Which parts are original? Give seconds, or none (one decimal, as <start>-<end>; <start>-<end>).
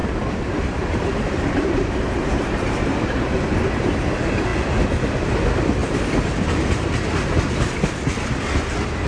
3.4-9.1